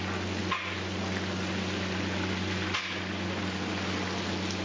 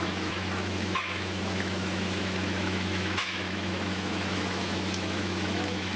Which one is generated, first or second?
second